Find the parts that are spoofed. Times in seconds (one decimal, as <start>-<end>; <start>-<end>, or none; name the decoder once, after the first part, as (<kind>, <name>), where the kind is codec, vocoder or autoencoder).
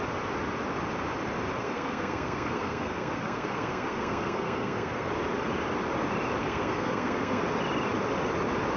1.6-5.1 (codec, SNAC); 6.4-7.4